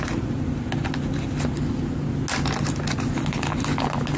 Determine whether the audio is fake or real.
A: real